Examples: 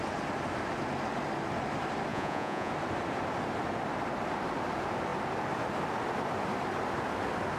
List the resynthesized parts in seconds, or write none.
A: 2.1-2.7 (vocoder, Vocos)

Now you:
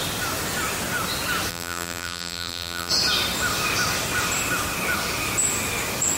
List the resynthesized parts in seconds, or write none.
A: 1.5-2.9 (vocoder, BigVGAN v2)

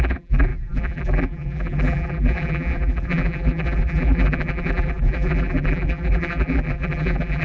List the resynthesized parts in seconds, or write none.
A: 0.0-7.4 (vocoder, BigVGAN v2)

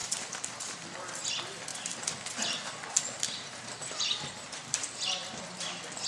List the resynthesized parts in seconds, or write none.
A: 0.0-1.2 (vocoder, BigVGAN v2); 1.7-5.4

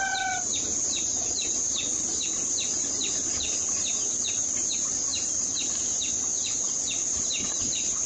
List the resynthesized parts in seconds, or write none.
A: none

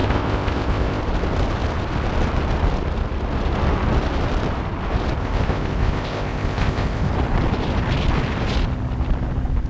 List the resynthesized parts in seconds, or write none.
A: 0.0-1.0 (codec, ZipCodec); 5.2-7.1